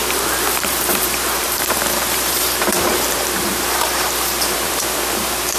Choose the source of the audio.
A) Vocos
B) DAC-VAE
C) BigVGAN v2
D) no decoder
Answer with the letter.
C